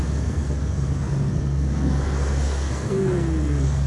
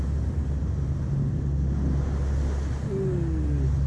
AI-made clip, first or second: first